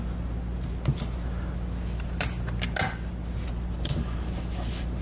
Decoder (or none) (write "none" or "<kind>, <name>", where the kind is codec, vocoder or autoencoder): none